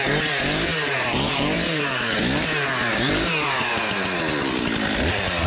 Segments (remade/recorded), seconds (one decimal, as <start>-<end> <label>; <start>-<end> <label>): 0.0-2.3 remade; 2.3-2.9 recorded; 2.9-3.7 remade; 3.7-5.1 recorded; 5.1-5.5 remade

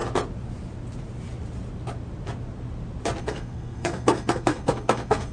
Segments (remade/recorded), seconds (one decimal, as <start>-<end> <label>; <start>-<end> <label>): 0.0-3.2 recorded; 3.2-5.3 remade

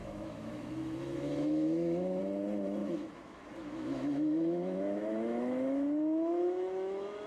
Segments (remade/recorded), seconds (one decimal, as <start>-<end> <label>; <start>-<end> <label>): 0.0-2.2 remade; 2.2-2.8 recorded; 2.8-7.3 remade